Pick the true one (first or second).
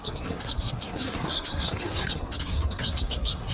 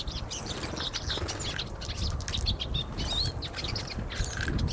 second